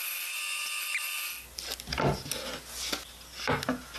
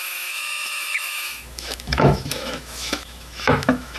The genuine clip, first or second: first